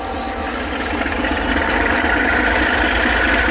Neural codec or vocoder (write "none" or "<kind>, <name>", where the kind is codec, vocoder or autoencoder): none